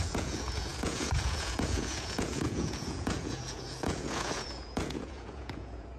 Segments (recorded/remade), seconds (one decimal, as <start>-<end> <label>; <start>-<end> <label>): 0.0-6.0 remade